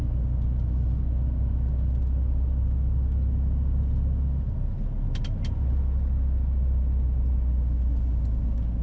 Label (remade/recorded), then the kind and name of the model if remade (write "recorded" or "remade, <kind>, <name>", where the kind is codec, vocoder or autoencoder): recorded